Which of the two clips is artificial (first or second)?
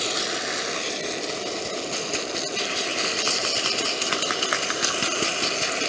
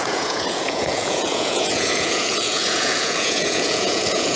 second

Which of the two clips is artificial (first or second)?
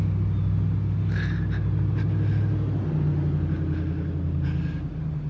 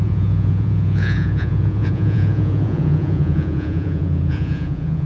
second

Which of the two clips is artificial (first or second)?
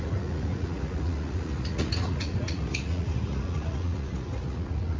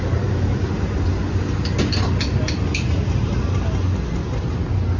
first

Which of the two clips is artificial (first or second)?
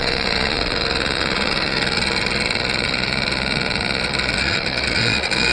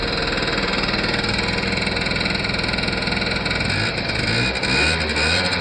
first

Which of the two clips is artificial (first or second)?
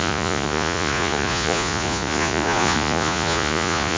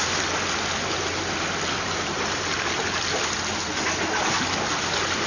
first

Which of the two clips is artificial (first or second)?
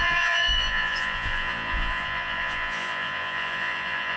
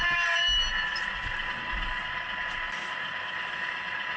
first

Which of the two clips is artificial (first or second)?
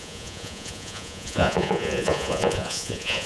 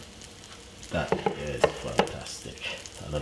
first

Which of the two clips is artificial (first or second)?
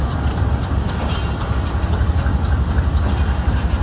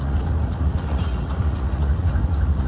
second